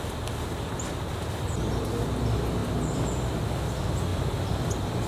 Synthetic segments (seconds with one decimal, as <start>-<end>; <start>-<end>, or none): none